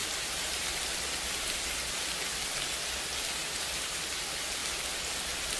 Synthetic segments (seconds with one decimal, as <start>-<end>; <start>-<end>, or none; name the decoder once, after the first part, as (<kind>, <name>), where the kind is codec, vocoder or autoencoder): 0.0-0.6 (vocoder, BigVGAN v2); 3.4-4.0